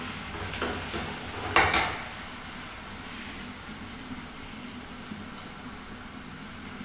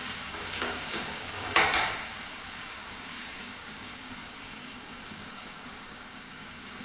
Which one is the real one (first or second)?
first